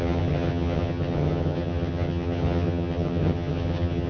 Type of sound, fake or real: fake